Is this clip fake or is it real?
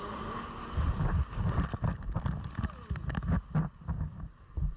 real